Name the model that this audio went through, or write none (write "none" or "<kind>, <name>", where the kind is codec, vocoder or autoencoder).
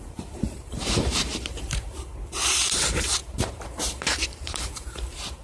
vocoder, BigVGAN v2